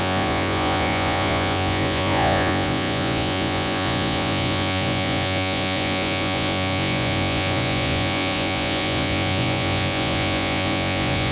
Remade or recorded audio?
remade